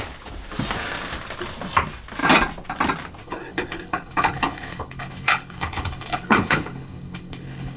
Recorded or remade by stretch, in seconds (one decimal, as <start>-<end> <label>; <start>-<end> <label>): 0.0-3.2 recorded; 3.2-7.8 remade